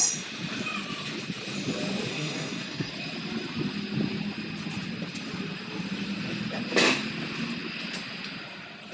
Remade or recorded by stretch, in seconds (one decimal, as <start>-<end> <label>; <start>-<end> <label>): 0.0-2.1 recorded; 2.1-2.9 remade; 2.9-8.9 recorded